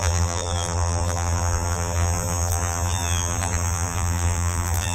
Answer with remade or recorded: remade